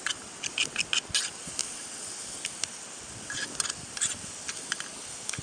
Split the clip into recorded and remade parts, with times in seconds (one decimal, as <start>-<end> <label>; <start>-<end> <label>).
0.0-5.4 recorded